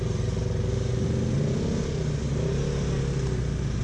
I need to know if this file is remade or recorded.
recorded